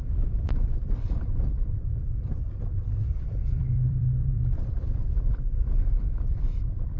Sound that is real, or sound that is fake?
fake